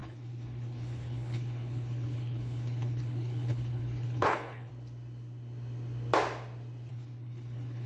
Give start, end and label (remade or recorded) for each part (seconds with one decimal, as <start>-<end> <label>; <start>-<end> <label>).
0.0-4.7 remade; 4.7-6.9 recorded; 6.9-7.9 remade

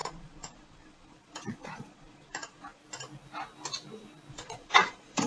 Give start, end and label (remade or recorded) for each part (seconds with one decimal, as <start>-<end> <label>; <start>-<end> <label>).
0.0-2.8 remade; 2.8-4.3 recorded; 4.3-5.3 remade

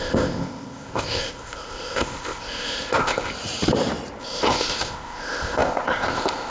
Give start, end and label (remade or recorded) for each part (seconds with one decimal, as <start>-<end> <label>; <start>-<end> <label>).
0.0-3.3 remade; 3.3-4.2 recorded; 4.2-6.5 remade